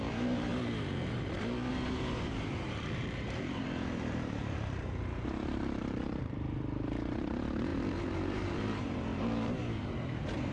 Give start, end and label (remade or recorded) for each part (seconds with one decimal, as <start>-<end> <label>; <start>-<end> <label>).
0.0-0.5 remade; 0.5-1.7 recorded; 1.7-10.5 remade